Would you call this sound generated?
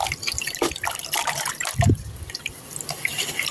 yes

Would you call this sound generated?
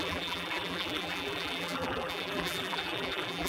yes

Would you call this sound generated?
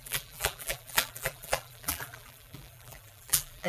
yes